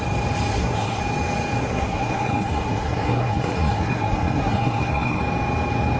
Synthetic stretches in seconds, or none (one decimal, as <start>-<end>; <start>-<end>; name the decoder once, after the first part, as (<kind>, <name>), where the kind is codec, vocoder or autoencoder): 0.5-1.0 (codec, SNAC); 1.6-5.2